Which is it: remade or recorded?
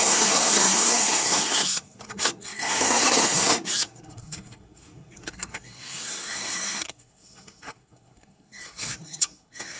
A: remade